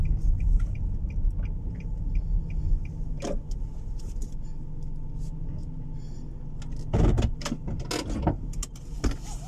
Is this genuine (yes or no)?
yes